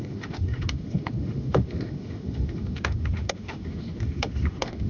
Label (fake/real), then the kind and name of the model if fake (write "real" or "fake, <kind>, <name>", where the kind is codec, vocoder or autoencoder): fake, autoencoder, DAC-VAE